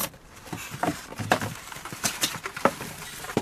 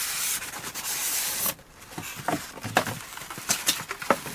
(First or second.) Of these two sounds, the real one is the second